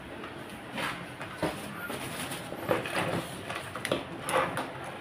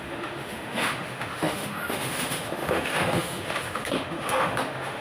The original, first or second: first